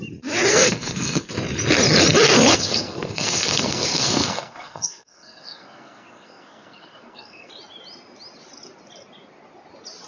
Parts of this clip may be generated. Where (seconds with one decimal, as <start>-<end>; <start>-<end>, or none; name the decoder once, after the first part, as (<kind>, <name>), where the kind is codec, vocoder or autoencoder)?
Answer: 0.5-1.3 (codec, SNAC); 2.5-7.5